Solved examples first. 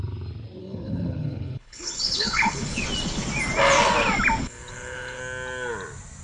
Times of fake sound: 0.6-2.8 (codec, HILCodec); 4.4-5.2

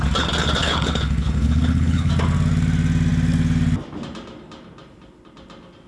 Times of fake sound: 0.6-2.1 (codec, HILCodec)

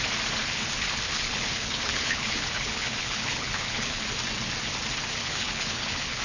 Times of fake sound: 0.4-4.0 (codec, HILCodec); 5.2-6.2

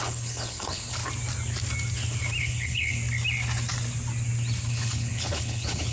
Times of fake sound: 0.0-1.0 (codec, HILCodec); 2.4-3.0; 4.7-5.9

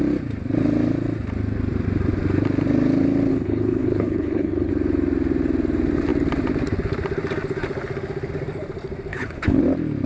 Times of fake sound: 3.3-4.7 (codec, HILCodec); 9.1-9.6